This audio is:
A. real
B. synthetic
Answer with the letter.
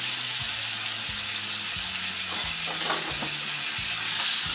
A